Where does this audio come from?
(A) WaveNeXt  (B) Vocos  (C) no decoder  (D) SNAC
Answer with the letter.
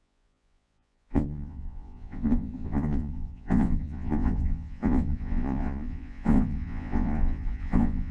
B